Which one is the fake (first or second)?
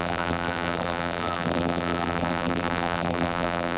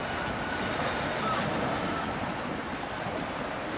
first